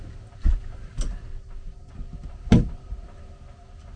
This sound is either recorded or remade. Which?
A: recorded